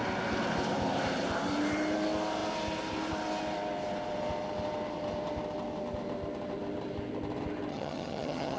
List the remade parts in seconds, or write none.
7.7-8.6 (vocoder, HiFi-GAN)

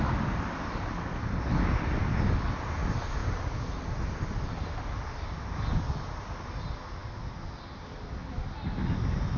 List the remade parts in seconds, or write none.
none

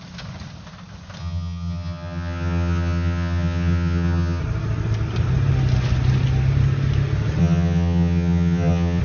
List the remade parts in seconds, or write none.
1.2-4.4 (vocoder, HiFi-GAN); 7.4-9.0

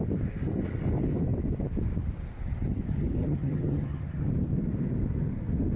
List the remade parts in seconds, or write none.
3.2-4.3 (vocoder, HiFi-GAN)

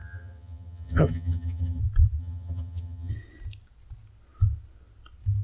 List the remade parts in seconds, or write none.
0.0-1.8 (vocoder, HiFi-GAN); 2.2-3.1

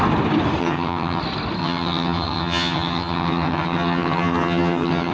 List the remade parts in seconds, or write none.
0.6-1.2 (vocoder, HiFi-GAN); 1.6-5.1